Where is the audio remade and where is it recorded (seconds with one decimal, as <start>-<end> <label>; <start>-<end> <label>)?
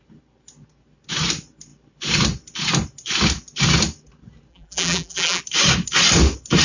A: 0.0-4.5 recorded; 4.5-5.4 remade; 5.4-6.6 recorded